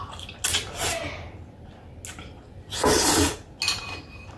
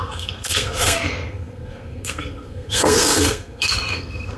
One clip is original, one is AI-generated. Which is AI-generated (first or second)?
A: second